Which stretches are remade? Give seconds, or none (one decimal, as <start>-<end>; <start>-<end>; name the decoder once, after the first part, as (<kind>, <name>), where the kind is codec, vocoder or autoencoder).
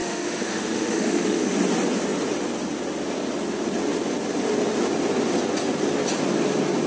0.0-1.5 (autoencoder, DAC-VAE)